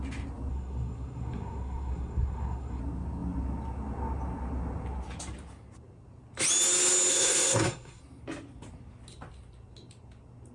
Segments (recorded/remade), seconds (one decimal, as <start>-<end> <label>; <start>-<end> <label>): 0.0-0.5 recorded; 0.5-2.8 remade; 2.8-7.1 recorded; 7.1-8.0 remade; 8.0-10.5 recorded